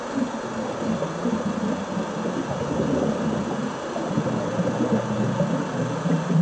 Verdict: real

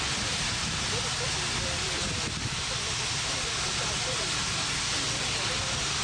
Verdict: real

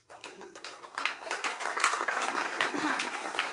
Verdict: fake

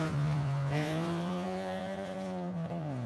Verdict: fake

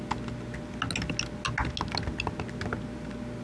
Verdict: real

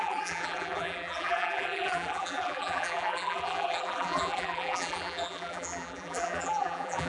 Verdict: fake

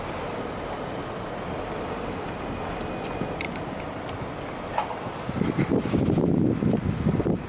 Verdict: real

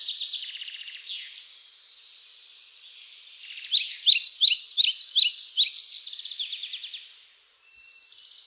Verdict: real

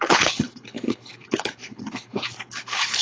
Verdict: fake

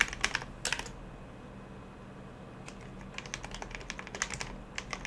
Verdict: real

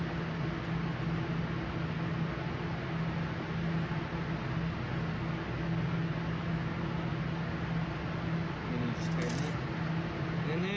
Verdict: real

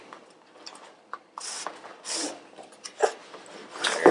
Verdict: real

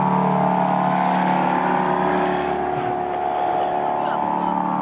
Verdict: real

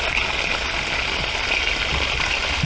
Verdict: real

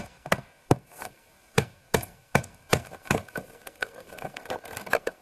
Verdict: fake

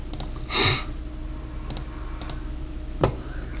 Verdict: real